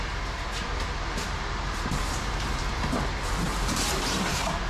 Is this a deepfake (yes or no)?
yes